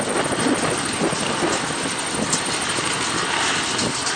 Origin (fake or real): real